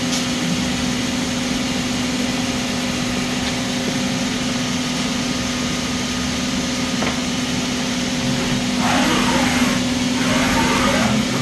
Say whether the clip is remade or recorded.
recorded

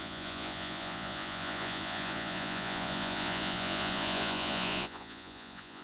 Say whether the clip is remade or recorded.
remade